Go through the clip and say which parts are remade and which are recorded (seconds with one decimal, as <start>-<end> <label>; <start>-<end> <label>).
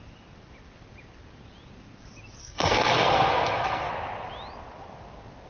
0.0-2.4 recorded; 2.4-3.9 remade; 3.9-5.5 recorded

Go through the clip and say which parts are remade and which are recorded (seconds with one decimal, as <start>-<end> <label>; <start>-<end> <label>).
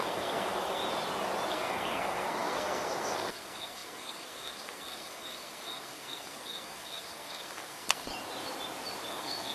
0.0-0.8 remade; 0.8-1.5 recorded; 1.5-8.1 remade; 8.1-9.1 recorded; 9.1-9.5 remade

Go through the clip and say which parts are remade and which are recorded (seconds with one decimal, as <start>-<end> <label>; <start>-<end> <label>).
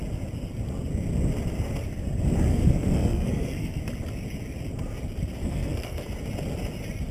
0.0-2.5 recorded; 2.5-3.8 remade; 3.8-5.4 recorded; 5.4-6.0 remade; 6.0-7.1 recorded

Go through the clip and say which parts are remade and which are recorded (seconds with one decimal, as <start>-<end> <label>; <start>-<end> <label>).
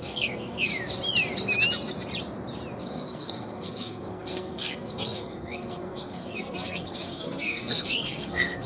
0.0-0.7 remade; 0.7-2.8 recorded; 2.8-8.7 remade